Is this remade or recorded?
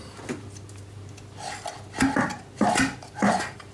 recorded